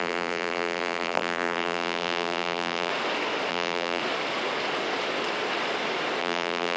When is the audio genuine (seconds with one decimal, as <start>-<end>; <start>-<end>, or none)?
2.9-3.5; 4.0-6.2